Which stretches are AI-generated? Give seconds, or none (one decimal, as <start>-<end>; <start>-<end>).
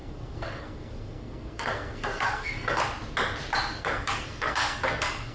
0.0-2.8; 3.8-5.3